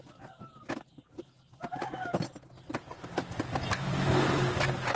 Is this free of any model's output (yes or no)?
yes